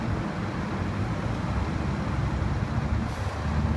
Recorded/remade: recorded